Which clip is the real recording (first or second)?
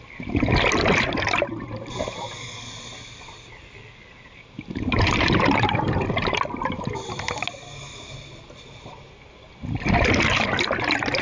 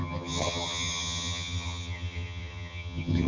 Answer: first